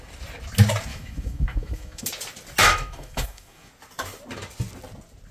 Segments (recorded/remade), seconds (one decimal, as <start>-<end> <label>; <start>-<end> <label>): 0.0-0.9 recorded; 0.9-2.0 remade; 2.0-2.6 recorded; 2.6-3.7 remade; 3.7-5.3 recorded